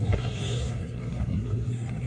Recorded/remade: remade